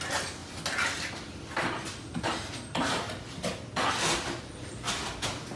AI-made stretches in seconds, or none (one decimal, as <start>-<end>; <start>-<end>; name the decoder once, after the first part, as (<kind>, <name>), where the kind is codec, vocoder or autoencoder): none